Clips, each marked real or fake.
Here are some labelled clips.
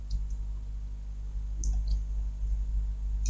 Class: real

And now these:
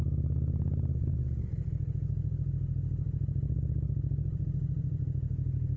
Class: real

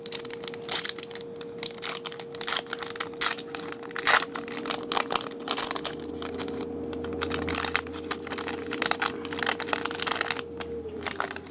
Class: real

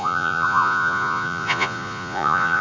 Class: fake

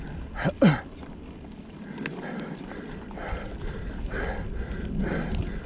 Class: real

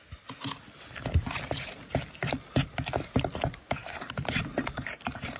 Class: real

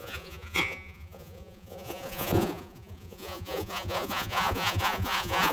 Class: fake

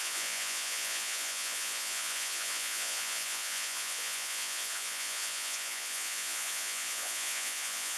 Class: fake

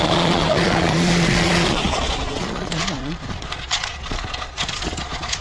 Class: fake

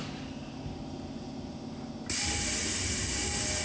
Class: real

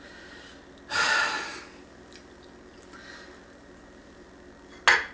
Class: real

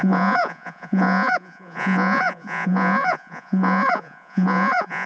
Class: fake